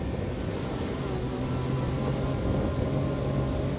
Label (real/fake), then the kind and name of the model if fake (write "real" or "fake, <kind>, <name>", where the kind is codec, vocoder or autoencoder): real